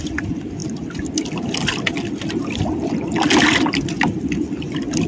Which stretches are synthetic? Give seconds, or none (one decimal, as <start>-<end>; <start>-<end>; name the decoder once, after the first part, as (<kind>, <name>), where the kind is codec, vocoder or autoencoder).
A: none